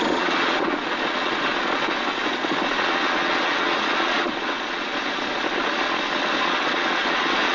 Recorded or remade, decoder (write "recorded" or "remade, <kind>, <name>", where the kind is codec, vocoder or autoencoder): remade, vocoder, Vocos